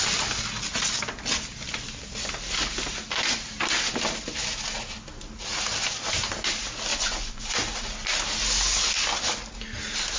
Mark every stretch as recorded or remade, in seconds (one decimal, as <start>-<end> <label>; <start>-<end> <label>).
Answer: 0.0-6.9 recorded; 6.9-7.4 remade; 7.4-10.2 recorded

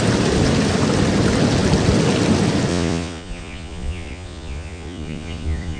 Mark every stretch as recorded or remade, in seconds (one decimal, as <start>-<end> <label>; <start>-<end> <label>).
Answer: 0.0-2.7 recorded; 2.7-5.8 remade

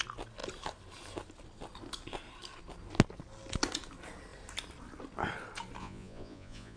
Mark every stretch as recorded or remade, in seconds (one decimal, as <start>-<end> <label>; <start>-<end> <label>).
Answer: 0.0-5.8 recorded; 5.8-6.8 remade

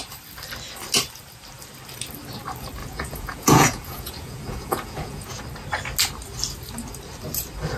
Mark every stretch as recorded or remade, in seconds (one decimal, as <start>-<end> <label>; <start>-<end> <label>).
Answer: 0.0-2.8 recorded; 2.8-5.4 remade; 5.4-7.8 recorded

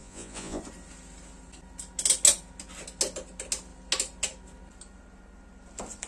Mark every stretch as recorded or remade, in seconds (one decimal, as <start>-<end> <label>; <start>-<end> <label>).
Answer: 0.0-0.6 remade; 0.6-6.1 recorded

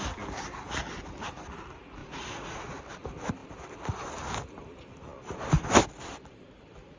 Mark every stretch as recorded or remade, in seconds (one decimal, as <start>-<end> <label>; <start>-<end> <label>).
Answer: 0.0-2.0 recorded; 2.0-2.8 remade; 2.8-7.0 recorded

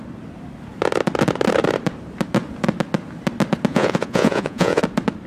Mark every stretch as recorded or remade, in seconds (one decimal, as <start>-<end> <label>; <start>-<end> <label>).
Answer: 0.0-3.7 recorded; 3.7-4.8 remade; 4.8-5.3 recorded